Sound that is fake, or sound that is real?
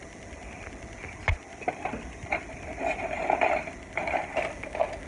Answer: real